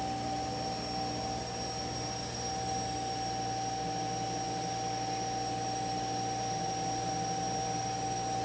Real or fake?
real